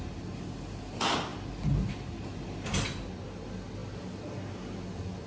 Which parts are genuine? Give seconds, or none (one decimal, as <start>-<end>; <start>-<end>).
0.0-5.3